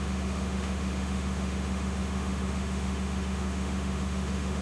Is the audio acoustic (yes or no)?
no